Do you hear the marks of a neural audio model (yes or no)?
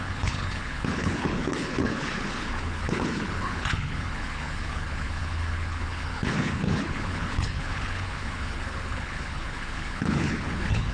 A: yes